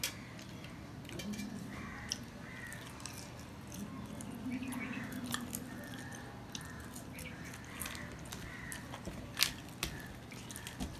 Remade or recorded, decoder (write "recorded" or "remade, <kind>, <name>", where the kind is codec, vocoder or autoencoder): recorded